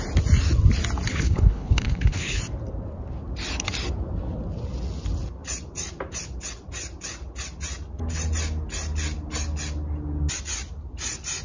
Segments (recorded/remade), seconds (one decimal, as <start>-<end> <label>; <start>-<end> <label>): 0.0-1.1 recorded; 1.1-2.4 remade; 2.4-11.4 recorded